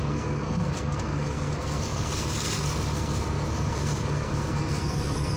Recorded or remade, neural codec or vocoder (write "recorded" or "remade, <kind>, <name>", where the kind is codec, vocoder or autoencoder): remade, codec, SNAC